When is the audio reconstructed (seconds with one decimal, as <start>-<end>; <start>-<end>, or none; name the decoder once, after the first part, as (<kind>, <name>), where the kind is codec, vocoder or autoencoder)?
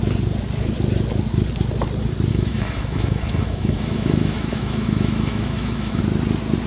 2.3-6.0 (autoencoder, DAC-VAE)